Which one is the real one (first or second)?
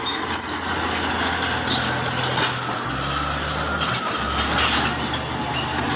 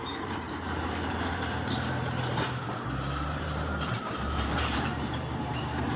first